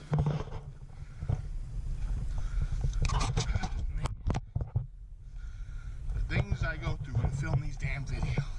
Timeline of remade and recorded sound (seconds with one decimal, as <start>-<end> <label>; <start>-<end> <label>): 0.0-8.6 recorded